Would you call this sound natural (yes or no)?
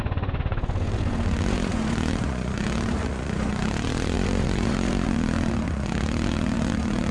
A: no